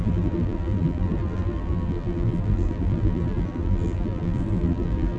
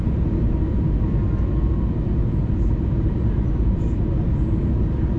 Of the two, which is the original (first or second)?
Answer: second